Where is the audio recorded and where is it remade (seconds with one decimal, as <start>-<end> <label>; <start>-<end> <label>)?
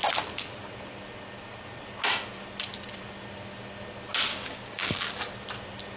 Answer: 0.0-4.3 recorded; 4.3-5.2 remade; 5.2-6.0 recorded